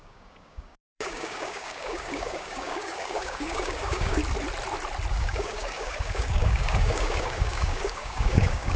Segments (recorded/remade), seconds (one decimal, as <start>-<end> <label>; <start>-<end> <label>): 0.0-4.2 remade; 4.2-5.1 recorded; 5.1-8.8 remade